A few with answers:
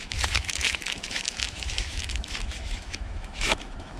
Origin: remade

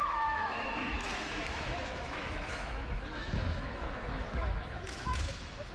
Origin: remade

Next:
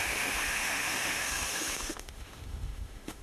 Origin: remade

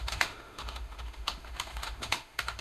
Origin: remade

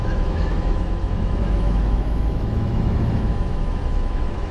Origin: remade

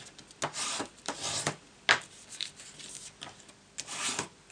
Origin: recorded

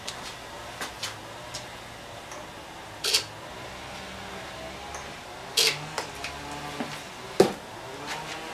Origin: recorded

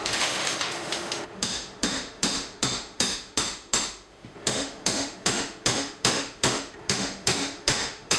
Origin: remade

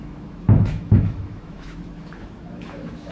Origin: remade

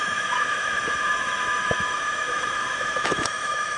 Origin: remade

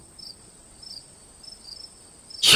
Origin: recorded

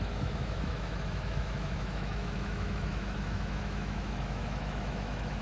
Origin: remade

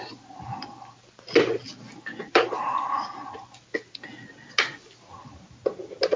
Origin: recorded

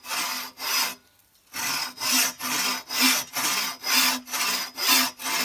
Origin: recorded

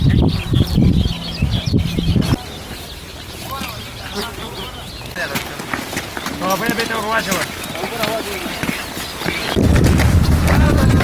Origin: recorded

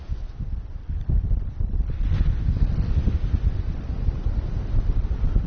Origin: recorded